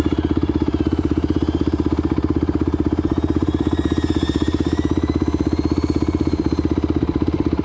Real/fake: fake